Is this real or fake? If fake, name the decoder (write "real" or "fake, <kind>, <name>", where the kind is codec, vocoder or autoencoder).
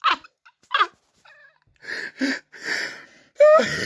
real